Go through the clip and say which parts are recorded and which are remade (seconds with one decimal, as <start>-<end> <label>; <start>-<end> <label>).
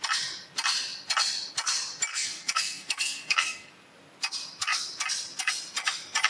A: 0.0-2.1 recorded; 2.1-3.7 remade; 3.7-6.3 recorded